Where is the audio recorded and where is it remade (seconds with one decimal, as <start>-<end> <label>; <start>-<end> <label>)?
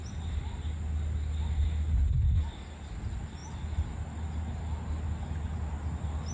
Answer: 0.0-6.3 recorded